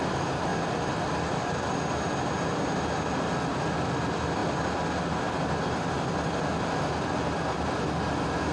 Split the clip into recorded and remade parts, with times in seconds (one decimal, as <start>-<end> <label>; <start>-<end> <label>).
0.0-8.5 recorded